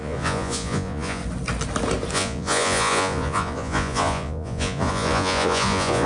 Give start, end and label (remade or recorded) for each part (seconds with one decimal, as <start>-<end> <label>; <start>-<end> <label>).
0.0-1.2 remade; 1.2-2.1 recorded; 2.1-6.1 remade